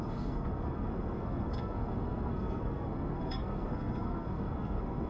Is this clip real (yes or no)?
no